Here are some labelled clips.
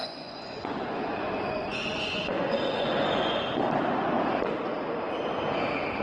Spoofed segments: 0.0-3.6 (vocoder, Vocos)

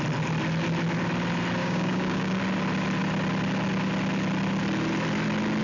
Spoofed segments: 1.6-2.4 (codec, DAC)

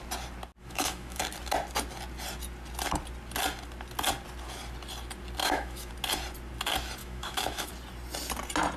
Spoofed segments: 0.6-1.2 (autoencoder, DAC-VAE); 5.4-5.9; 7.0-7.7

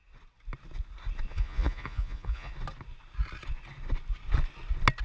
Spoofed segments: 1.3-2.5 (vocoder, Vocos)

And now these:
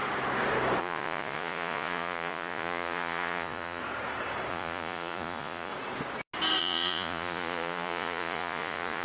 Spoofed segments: 0.8-3.8 (vocoder, Vocos); 4.5-5.7; 6.6-9.0

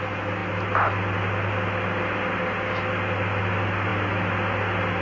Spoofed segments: none

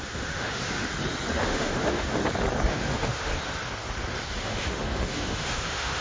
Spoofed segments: 0.0-0.9 (autoencoder, DAC-VAE); 1.4-2.2; 2.7-3.3; 4.4-6.0